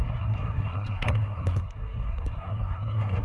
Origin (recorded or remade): remade